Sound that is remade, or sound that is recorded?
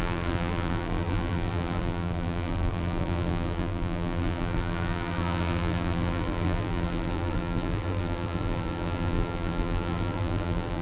remade